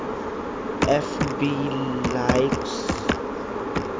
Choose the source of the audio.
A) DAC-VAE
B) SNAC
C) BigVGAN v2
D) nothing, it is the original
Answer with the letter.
D